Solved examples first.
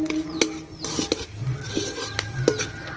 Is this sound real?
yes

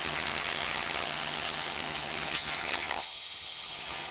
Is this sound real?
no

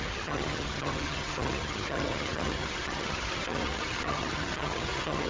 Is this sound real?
no